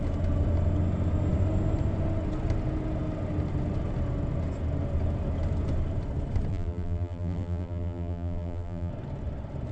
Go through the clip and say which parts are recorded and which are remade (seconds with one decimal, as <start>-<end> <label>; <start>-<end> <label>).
0.0-6.5 recorded; 6.5-8.9 remade; 8.9-9.7 recorded